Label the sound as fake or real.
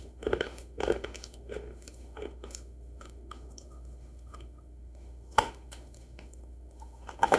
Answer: fake